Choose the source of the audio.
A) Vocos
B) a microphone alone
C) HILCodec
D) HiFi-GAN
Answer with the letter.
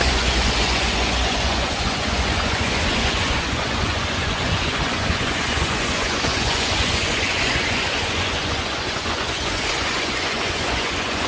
A